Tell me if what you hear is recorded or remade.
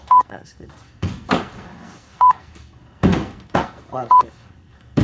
remade